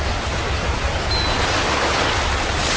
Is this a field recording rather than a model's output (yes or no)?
yes